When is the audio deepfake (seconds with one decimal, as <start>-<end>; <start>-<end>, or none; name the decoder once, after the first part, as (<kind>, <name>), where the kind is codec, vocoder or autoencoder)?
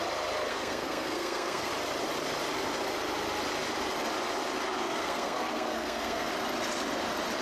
0.5-1.7 (codec, SNAC); 4.8-6.3